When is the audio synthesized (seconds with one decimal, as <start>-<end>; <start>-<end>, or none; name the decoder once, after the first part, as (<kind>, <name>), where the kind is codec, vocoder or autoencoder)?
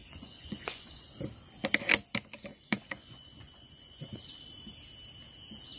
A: 0.0-1.1 (vocoder, Vocos); 2.5-4.0